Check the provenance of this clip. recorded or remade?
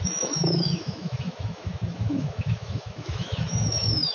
remade